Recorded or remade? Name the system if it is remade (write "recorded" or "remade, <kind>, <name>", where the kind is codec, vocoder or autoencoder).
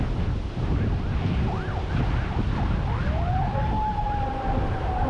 recorded